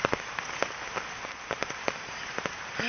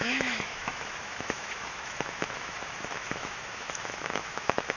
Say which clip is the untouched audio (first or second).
first